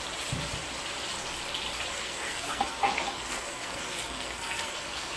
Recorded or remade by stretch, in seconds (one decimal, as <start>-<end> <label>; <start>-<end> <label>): 0.0-1.9 recorded; 1.9-5.2 remade